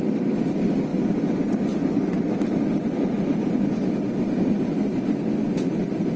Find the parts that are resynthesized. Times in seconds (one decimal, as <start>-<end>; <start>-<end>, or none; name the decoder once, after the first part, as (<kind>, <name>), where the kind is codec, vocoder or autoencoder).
none